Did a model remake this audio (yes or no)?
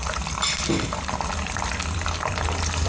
no